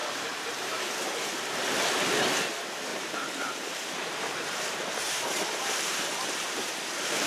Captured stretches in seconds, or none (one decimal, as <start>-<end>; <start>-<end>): 0.8-2.9